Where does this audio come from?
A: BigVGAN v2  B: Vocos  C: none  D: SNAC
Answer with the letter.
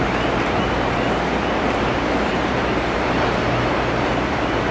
A